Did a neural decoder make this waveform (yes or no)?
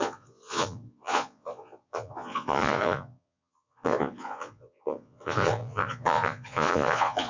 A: yes